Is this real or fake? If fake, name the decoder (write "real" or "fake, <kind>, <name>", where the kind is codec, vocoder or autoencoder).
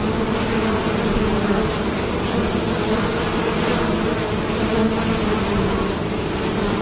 real